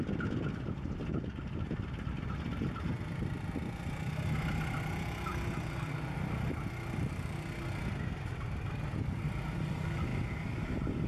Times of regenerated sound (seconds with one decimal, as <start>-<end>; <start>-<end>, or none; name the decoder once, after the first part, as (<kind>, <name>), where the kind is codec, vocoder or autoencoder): none